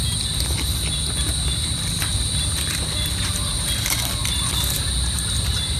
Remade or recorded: recorded